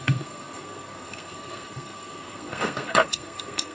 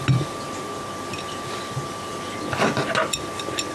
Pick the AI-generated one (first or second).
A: first